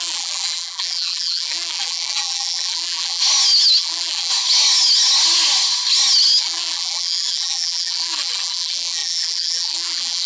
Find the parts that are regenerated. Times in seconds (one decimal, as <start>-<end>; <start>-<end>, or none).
0.0-3.2; 3.8-4.3; 6.4-10.3